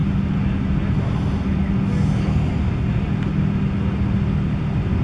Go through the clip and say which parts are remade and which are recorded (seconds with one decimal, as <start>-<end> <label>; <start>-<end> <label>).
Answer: 0.0-5.0 recorded